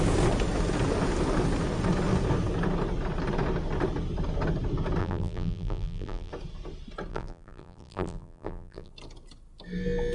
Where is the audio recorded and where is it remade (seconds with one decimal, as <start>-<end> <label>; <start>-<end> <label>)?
0.0-5.0 recorded; 5.0-6.3 remade; 6.3-7.1 recorded; 7.1-8.9 remade; 8.9-10.1 recorded